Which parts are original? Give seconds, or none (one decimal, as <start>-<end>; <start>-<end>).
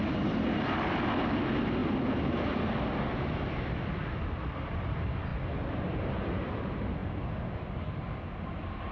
0.0-8.9